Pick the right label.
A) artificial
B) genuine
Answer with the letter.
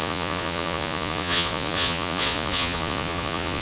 A